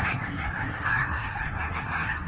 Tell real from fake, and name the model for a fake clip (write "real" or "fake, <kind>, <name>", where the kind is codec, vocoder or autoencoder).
fake, codec, SNAC